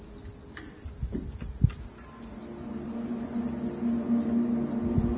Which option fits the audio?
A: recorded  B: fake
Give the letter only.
A